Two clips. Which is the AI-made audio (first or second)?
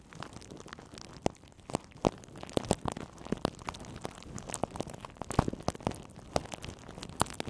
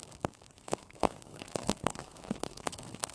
second